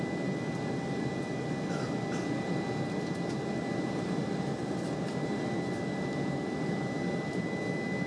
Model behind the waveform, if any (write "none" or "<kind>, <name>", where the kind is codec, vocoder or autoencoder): none